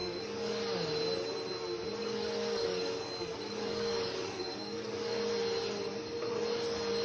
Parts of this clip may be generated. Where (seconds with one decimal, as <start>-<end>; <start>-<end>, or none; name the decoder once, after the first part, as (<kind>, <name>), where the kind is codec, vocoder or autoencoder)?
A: 0.0-0.6 (codec, DAC); 2.0-5.2